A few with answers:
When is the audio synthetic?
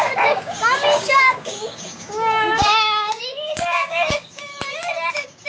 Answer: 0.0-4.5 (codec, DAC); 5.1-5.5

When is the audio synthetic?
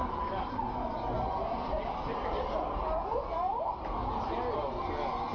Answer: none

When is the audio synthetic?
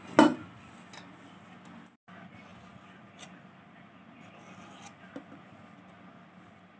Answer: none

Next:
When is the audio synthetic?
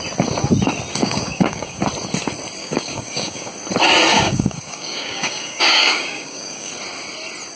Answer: 1.0-1.8 (codec, DAC); 2.6-3.5; 4.1-6.7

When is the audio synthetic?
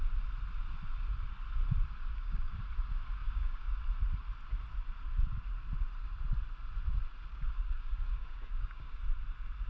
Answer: 2.1-2.6 (codec, DAC); 3.2-3.8; 7.3-9.0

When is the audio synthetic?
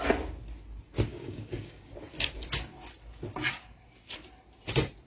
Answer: 1.1-1.9 (codec, DAC)